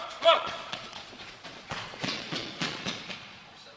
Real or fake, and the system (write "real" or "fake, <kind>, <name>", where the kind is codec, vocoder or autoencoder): fake, vocoder, Vocos